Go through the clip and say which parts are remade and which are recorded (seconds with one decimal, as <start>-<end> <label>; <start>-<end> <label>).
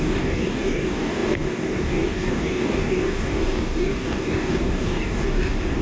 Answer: 0.0-5.8 remade